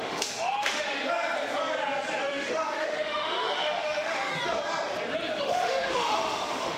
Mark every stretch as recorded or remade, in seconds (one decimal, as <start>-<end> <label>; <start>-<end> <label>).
0.0-1.0 remade; 1.0-2.2 recorded; 2.2-4.3 remade; 4.3-5.4 recorded; 5.4-6.8 remade